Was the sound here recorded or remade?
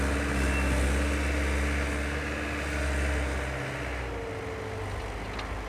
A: recorded